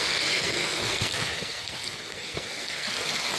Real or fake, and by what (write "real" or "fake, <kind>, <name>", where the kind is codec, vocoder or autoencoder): fake, codec, SNAC